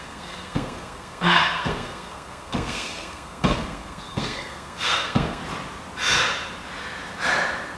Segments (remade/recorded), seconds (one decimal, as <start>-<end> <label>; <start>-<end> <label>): 0.0-5.4 remade; 5.4-7.8 recorded